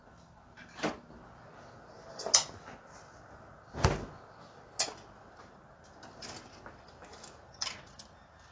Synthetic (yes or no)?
no